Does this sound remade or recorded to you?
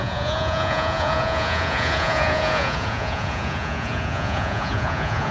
remade